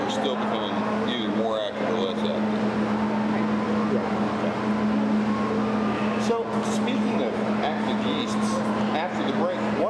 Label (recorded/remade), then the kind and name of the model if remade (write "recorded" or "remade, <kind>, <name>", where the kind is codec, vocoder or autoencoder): recorded